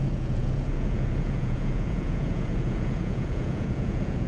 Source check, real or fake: fake